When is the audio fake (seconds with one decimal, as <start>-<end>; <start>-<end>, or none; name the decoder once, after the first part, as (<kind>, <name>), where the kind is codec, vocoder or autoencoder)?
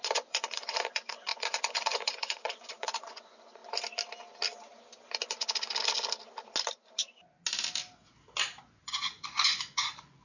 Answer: 0.0-3.6 (vocoder, Vocos); 8.6-10.2